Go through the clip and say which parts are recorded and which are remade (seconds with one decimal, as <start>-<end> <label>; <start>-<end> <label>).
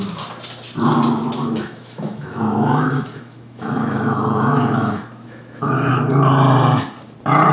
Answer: 0.0-1.4 recorded; 1.4-5.9 remade; 5.9-7.5 recorded